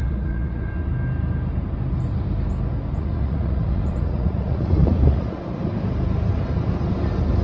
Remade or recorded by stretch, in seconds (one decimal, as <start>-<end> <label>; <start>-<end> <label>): 0.0-0.7 remade; 0.7-2.9 recorded; 2.9-5.6 remade; 5.6-7.4 recorded